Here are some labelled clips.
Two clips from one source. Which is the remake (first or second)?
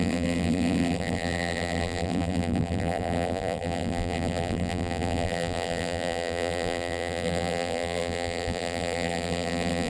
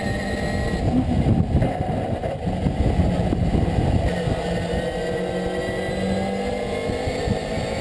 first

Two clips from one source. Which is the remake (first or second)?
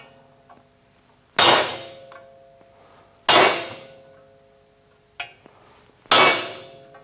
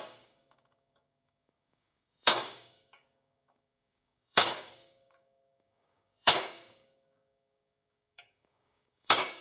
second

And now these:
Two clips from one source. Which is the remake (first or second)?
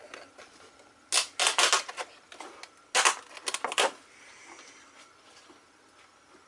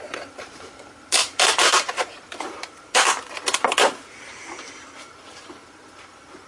second